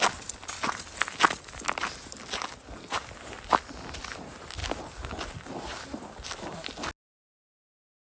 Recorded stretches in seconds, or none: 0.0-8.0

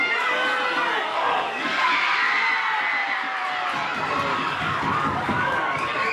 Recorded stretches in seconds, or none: 0.0-1.1; 1.9-4.3

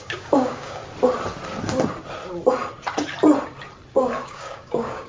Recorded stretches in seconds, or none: 0.8-3.9

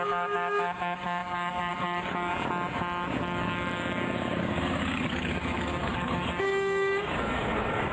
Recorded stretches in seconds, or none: 2.3-3.2

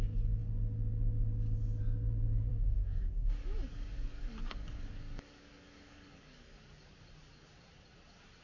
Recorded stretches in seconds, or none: 0.0-2.5; 6.6-8.4

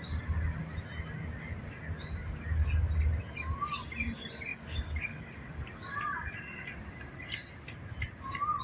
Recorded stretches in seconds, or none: 0.0-4.5; 5.2-8.6